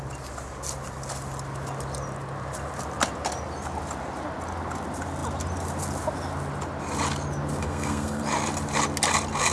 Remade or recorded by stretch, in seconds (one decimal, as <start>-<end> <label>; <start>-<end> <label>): 0.0-7.6 recorded; 7.6-8.2 remade; 8.2-9.5 recorded